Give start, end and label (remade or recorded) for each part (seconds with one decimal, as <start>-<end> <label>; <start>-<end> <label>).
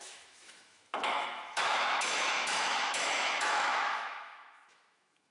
0.0-5.3 remade